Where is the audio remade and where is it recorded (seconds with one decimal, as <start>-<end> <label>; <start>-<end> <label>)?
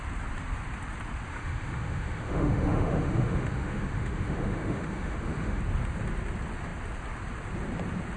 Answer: 0.0-1.3 recorded; 1.3-5.6 remade; 5.6-8.2 recorded